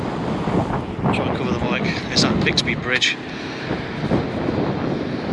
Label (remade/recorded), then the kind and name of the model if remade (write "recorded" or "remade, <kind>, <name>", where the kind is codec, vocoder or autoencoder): recorded